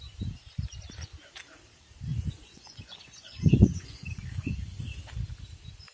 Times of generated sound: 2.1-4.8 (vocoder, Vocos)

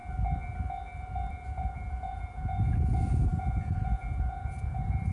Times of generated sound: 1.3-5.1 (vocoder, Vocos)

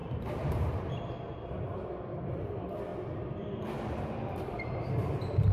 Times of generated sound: 0.0-0.9 (vocoder, BigVGAN v2)

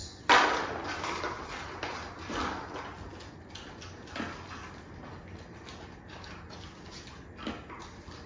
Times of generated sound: none

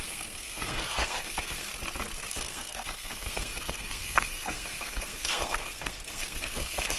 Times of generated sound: 0.0-1.7 (codec, SNAC); 2.3-7.0